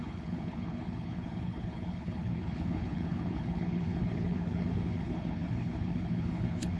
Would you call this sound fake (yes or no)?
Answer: yes